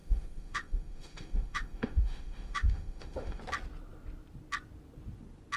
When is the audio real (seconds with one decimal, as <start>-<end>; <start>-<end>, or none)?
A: 3.4-5.6